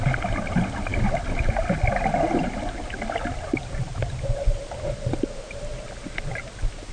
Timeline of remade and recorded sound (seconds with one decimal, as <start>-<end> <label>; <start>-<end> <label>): 0.0-6.9 recorded